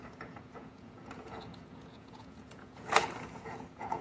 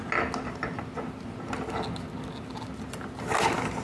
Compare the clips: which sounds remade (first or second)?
first